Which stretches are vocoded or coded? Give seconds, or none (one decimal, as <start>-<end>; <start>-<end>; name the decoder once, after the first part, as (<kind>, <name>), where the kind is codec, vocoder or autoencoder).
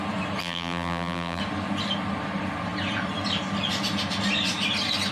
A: 0.4-1.4 (vocoder, BigVGAN v2)